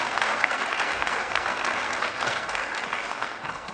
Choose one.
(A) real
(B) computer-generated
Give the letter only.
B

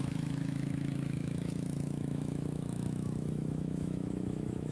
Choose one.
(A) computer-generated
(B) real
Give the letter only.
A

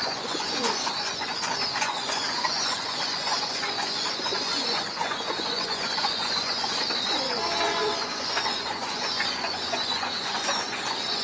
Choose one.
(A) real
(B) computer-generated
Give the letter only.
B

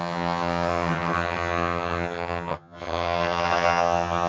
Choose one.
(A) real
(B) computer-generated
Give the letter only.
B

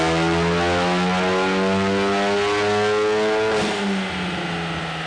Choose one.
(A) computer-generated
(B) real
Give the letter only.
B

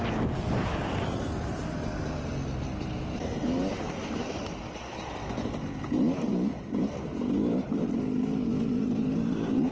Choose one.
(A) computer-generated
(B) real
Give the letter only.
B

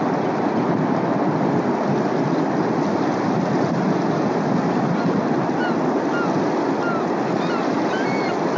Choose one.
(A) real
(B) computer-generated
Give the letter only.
A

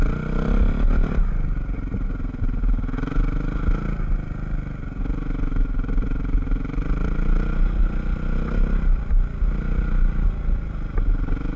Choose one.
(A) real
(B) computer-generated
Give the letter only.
A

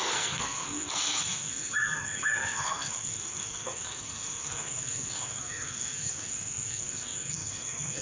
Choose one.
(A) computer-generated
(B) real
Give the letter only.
A